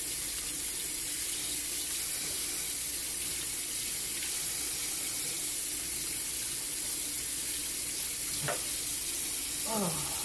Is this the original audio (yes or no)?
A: yes